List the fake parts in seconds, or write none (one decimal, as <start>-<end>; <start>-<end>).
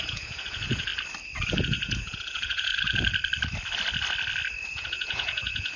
0.0-0.9; 1.6-2.7; 4.7-5.8